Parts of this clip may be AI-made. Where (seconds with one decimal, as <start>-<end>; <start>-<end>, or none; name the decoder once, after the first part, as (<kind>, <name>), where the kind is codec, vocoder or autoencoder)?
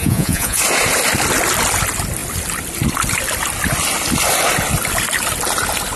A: 0.0-0.6 (vocoder, Vocos)